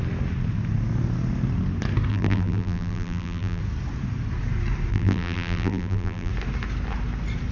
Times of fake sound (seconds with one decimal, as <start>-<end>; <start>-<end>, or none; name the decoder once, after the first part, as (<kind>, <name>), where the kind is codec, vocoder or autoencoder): 2.1-3.6 (vocoder, BigVGAN v2); 4.9-6.3